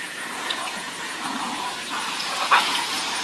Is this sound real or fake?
fake